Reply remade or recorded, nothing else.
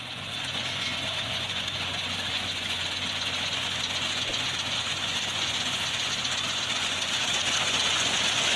remade